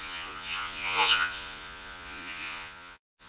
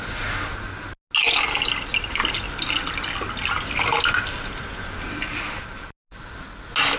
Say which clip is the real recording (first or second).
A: second